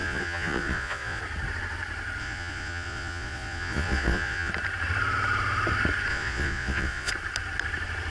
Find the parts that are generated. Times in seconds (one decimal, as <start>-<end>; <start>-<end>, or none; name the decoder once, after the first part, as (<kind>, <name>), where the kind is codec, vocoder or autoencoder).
0.0-1.2 (vocoder, Vocos); 2.2-4.5; 6.1-7.1